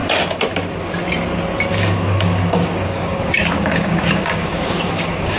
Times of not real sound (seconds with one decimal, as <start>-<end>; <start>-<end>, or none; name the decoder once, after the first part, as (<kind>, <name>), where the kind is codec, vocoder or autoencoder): 1.7-5.4 (codec, DAC)